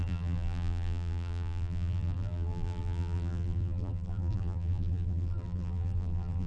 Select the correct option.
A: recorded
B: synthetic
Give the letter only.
B